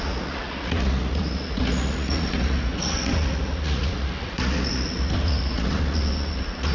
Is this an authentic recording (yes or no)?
no